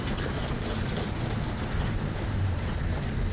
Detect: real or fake fake